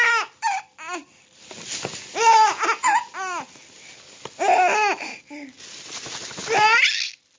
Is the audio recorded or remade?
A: recorded